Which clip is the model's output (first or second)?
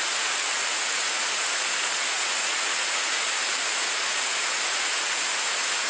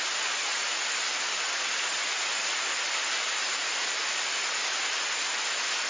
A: first